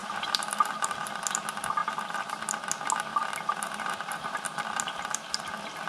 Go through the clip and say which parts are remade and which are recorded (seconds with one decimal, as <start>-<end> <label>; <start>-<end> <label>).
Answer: 0.0-1.1 remade; 1.1-1.8 recorded; 1.8-2.4 remade; 2.4-3.1 recorded; 3.1-5.2 remade; 5.2-5.9 recorded

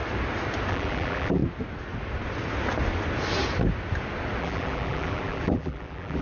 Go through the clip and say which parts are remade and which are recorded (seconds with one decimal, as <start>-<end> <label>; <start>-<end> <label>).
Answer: 0.0-0.7 recorded; 0.7-1.4 remade; 1.4-4.4 recorded; 4.4-6.2 remade

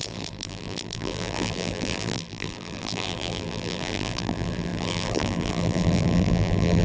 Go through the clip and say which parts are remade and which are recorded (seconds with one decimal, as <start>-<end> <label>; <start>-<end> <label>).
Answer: 0.0-6.8 remade

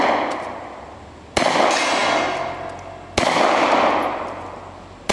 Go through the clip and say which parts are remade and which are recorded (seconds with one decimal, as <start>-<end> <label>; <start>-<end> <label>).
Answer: 0.0-5.1 recorded